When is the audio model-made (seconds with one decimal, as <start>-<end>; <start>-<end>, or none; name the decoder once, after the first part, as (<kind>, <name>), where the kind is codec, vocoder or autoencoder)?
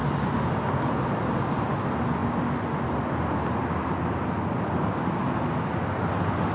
none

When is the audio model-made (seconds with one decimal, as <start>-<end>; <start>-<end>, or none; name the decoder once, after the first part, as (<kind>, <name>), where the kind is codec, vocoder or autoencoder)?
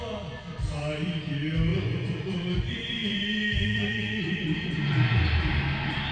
1.7-4.9 (vocoder, Vocos)